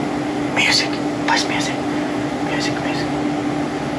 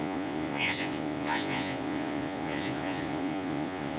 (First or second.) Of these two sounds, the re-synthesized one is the second